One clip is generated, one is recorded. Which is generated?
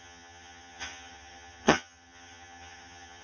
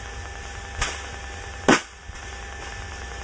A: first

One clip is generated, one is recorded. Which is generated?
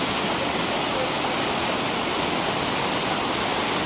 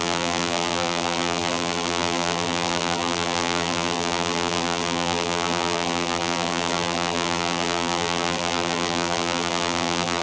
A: second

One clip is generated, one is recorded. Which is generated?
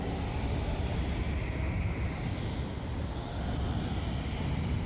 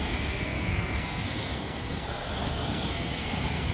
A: second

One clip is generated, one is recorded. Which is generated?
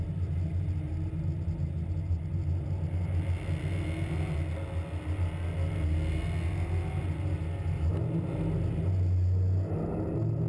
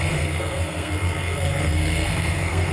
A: second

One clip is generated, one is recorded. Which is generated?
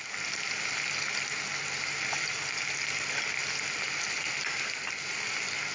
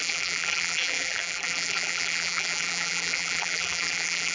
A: second